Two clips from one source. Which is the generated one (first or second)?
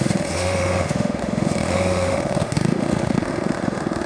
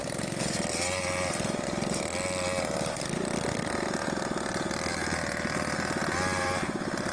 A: first